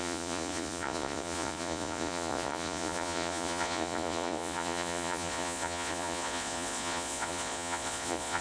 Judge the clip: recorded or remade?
remade